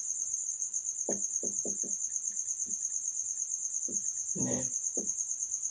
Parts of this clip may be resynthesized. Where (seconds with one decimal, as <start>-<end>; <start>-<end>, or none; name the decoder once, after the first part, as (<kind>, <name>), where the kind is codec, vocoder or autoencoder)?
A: none